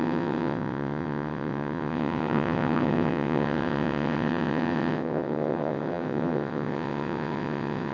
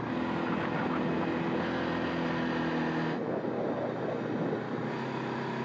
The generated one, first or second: first